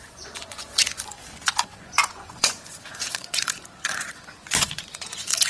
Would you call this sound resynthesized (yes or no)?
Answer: yes